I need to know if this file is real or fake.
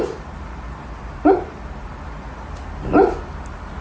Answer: real